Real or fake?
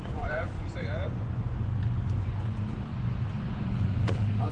fake